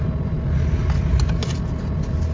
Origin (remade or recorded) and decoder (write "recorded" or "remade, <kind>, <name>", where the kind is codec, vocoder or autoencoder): recorded